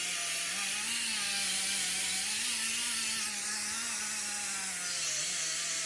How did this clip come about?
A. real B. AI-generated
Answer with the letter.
A